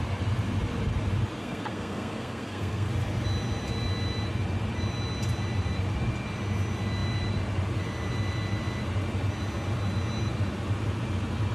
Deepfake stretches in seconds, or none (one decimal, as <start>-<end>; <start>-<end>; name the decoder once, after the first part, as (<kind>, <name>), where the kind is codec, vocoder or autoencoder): 1.4-2.9 (codec, SNAC)